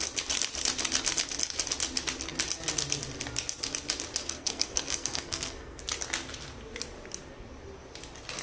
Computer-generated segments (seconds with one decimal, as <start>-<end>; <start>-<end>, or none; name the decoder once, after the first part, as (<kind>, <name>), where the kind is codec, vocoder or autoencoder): 4.2-5.8 (codec, SNAC)